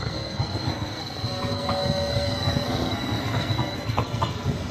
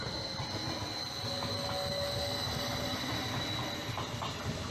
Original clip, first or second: second